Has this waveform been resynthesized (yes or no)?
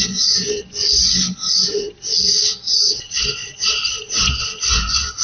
no